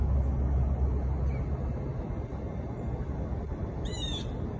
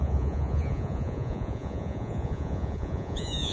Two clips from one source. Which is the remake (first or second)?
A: second